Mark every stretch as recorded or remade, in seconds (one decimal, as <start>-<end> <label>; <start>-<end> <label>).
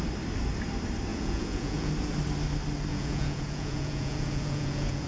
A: 0.0-1.1 recorded; 1.1-1.9 remade; 1.9-2.9 recorded; 2.9-5.1 remade